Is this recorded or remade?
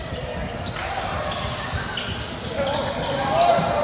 recorded